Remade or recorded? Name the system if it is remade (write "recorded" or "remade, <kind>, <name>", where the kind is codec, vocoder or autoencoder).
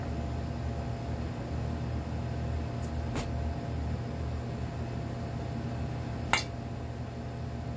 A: recorded